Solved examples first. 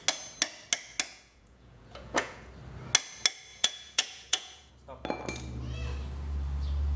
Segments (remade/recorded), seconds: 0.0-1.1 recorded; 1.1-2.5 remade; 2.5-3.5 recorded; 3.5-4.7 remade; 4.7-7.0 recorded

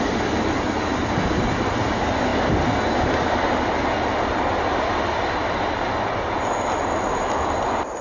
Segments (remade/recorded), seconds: 0.0-8.0 recorded

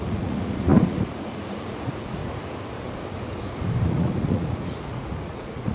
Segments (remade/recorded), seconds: 0.0-2.2 remade; 2.2-3.8 recorded; 3.8-5.7 remade

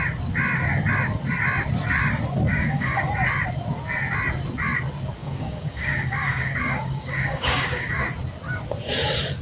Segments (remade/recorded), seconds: 0.0-2.5 recorded; 2.5-3.1 remade; 3.1-5.2 recorded; 5.2-8.0 remade; 8.0-9.4 recorded